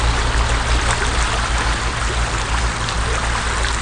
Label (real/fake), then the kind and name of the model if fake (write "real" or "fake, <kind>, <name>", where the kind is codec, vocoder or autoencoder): real